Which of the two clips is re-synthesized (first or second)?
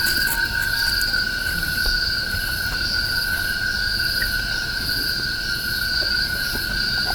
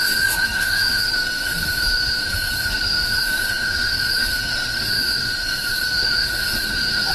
second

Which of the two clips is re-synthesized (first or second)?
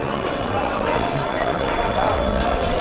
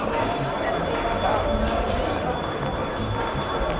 first